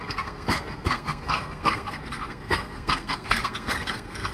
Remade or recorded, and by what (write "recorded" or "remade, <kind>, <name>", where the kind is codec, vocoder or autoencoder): remade, codec, SNAC